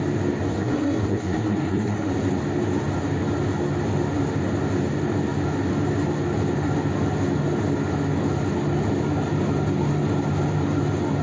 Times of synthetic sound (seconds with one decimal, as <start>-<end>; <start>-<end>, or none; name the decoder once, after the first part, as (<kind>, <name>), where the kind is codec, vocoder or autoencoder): 0.5-2.1 (codec, SNAC)